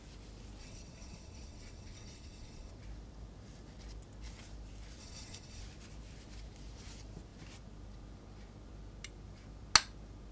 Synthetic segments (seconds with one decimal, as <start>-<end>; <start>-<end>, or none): 0.6-2.7; 5.0-5.6